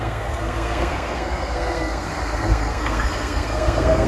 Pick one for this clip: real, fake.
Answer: fake